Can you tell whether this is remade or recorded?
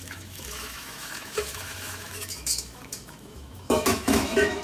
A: remade